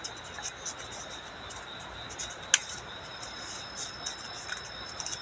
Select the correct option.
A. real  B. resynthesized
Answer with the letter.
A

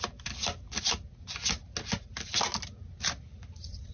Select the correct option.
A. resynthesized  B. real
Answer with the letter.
B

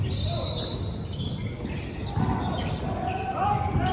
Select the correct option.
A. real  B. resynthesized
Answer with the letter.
A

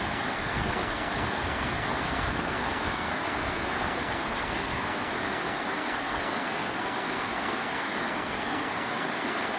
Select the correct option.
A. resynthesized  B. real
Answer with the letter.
A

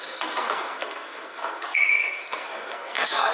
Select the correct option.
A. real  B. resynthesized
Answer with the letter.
B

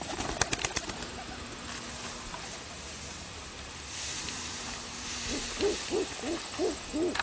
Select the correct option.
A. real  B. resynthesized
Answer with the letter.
A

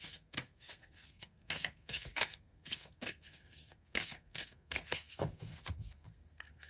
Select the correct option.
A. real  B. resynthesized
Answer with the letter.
B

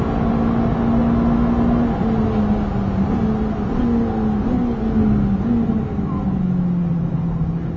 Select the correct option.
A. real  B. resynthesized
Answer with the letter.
A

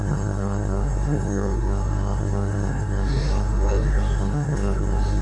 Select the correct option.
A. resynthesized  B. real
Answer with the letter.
A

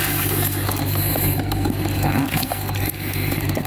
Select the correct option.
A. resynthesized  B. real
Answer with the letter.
A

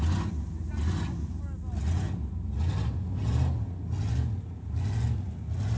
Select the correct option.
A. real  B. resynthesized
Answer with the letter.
A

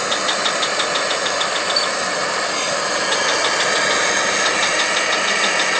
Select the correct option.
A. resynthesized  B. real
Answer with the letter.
B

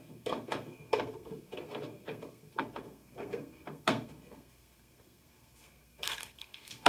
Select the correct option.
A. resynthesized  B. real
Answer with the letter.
A